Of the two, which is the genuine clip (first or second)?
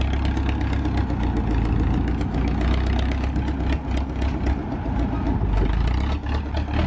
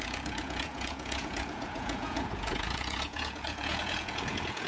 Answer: first